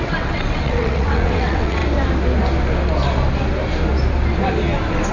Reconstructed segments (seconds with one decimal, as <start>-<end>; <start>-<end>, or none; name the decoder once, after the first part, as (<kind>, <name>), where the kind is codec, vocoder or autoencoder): 0.0-1.8 (vocoder, WaveNeXt)